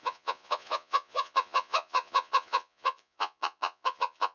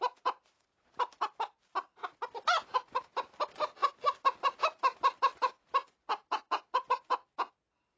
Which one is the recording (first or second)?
second